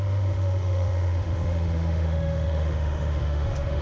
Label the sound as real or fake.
fake